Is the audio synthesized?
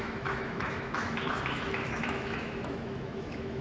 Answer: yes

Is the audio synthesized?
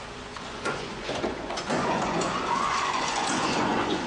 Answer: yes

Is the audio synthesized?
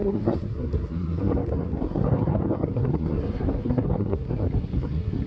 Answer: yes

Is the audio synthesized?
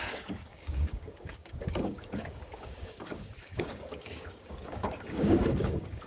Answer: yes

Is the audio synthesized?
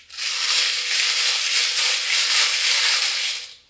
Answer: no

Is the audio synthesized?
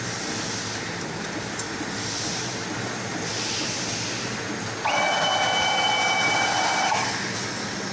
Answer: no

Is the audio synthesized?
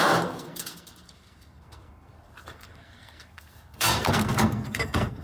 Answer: yes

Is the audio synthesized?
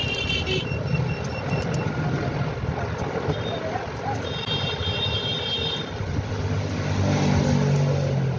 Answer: no